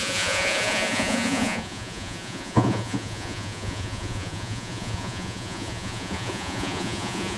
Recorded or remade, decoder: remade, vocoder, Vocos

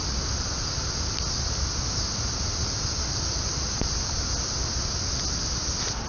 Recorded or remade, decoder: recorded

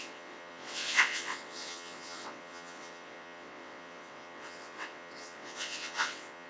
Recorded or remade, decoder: remade, vocoder, WaveNeXt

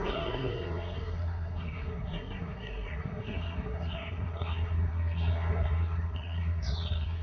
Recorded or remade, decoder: remade, codec, SNAC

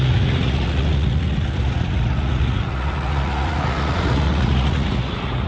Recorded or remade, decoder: remade, vocoder, Vocos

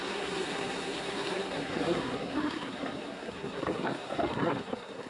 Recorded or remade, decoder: remade, codec, SNAC